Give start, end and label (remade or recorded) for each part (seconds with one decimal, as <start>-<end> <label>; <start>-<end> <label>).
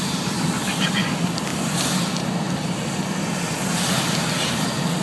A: 0.0-5.0 recorded